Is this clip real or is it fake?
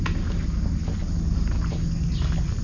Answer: real